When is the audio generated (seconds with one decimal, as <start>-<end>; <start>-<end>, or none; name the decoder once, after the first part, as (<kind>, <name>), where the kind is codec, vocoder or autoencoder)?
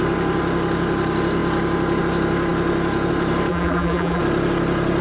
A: 3.5-4.2 (vocoder, BigVGAN v2)